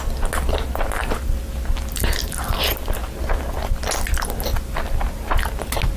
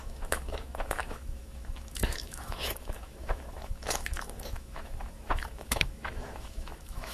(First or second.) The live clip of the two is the first